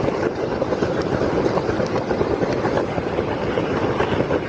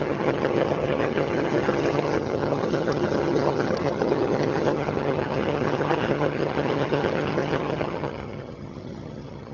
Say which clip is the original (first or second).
first